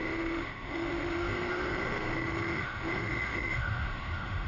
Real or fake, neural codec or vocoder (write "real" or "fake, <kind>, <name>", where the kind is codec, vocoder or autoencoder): fake, autoencoder, DAC-VAE